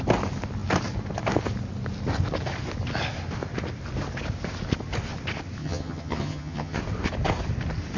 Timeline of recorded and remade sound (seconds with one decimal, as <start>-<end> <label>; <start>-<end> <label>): 0.0-5.6 recorded; 5.6-6.8 remade; 6.8-8.0 recorded